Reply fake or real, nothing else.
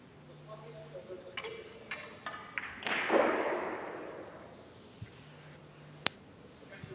real